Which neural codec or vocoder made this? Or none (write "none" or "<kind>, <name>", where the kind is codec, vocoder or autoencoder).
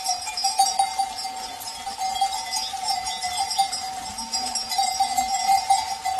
none